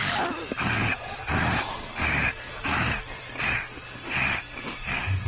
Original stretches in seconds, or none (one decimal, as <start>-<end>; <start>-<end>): 0.0-5.3